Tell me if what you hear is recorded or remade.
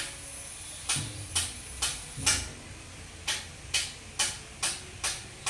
recorded